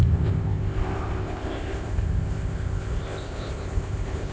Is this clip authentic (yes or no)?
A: no